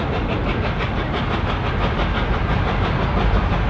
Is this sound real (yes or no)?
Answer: yes